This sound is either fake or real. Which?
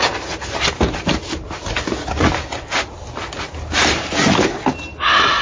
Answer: real